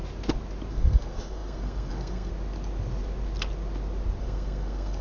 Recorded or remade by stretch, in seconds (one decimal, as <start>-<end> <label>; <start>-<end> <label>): 0.0-0.7 recorded; 0.7-2.3 remade; 2.3-4.2 recorded; 4.2-5.0 remade